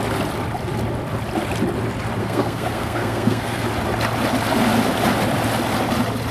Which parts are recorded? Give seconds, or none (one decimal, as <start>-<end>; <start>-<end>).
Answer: 0.0-2.2; 3.6-6.3